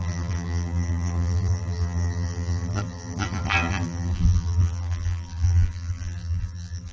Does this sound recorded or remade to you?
remade